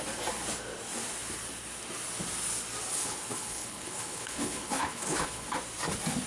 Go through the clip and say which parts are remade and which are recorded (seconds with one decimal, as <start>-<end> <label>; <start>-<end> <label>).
0.0-2.9 recorded; 2.9-5.5 remade; 5.5-6.3 recorded